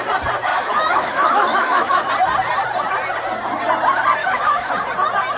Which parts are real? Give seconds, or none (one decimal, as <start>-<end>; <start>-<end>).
0.0-0.5; 2.1-4.2; 4.7-5.4